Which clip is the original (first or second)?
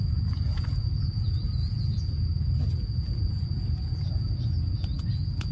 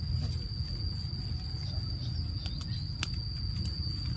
second